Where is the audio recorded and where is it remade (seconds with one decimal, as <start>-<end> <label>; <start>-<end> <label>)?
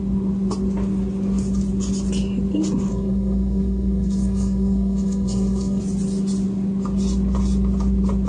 0.0-2.9 recorded; 2.9-5.8 remade; 5.8-8.3 recorded